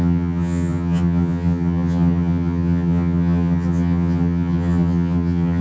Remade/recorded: remade